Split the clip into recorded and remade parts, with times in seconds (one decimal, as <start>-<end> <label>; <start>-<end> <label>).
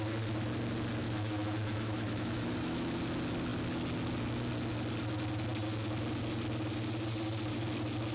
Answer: 0.0-1.0 recorded; 1.0-3.0 remade; 3.0-8.1 recorded